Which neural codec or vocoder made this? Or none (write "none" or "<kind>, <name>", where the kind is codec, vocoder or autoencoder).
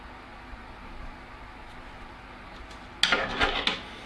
none